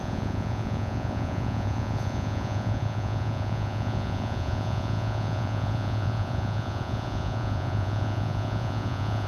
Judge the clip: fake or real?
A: fake